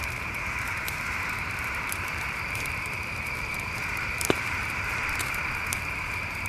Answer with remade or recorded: remade